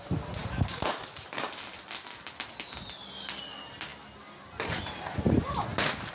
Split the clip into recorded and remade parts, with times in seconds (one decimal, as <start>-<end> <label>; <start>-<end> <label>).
0.0-0.4 recorded; 0.4-1.5 remade; 1.5-6.1 recorded